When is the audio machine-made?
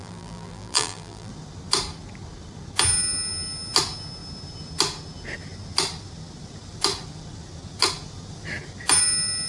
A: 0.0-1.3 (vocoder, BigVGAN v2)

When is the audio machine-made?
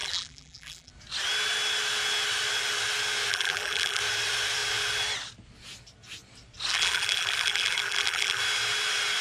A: 0.0-0.9 (vocoder, BigVGAN v2); 3.3-4.0; 6.7-8.4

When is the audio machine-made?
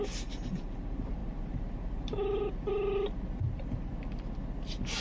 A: 0.0-3.9 (vocoder, BigVGAN v2)